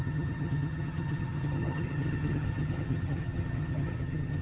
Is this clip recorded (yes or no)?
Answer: no